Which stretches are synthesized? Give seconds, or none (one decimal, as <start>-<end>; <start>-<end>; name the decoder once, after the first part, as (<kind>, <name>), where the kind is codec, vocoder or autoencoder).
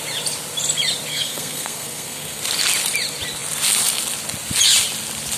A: 1.1-2.4 (codec, SNAC)